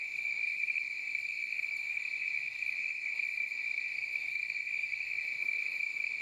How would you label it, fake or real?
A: fake